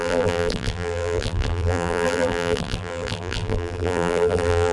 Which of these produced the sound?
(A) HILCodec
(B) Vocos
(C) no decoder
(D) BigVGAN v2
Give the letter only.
D